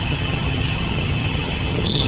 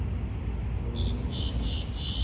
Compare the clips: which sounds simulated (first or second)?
first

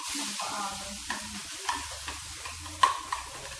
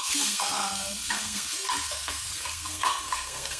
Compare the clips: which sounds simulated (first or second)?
second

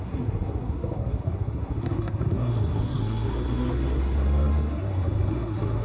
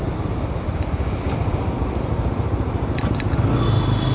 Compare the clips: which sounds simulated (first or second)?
first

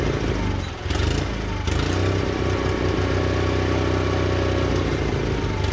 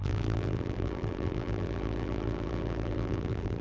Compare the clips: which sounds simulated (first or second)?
second